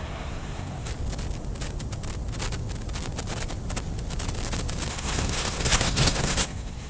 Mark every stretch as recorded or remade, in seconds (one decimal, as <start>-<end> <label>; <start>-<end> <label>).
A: 0.0-0.9 remade; 0.9-4.9 recorded; 4.9-6.9 remade

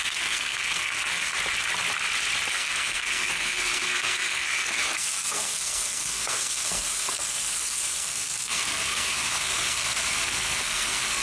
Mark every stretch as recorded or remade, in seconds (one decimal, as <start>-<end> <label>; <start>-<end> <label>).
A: 0.0-1.3 remade; 1.3-2.5 recorded; 2.5-11.2 remade

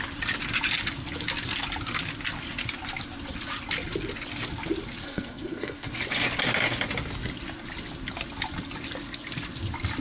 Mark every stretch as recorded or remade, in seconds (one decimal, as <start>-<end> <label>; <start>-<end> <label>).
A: 0.0-5.0 recorded; 5.0-5.9 remade; 5.9-10.0 recorded

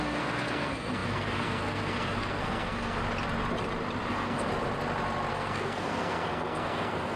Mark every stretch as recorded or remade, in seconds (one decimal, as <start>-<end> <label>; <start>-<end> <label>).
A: 0.0-3.0 remade; 3.0-4.1 recorded; 4.1-4.5 remade; 4.5-5.3 recorded; 5.3-7.2 remade